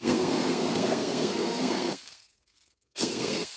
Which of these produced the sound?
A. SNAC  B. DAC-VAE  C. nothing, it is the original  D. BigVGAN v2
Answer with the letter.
A